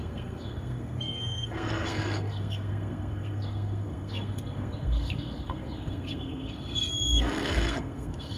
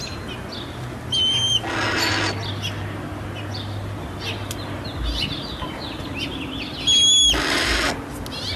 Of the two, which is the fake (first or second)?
first